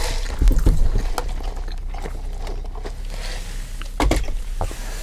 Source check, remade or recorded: recorded